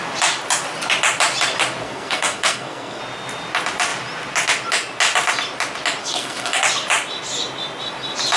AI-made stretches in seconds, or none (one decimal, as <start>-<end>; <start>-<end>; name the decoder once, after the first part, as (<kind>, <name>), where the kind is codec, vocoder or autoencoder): 1.8-3.0 (codec, SNAC); 6.0-6.6